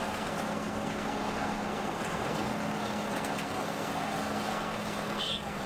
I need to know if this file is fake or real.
fake